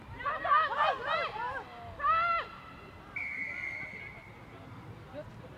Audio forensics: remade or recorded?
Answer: remade